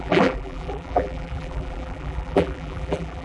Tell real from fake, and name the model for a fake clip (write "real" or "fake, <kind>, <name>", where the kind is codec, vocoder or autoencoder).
fake, vocoder, BigVGAN v2